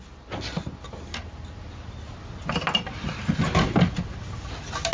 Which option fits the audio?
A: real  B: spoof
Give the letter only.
A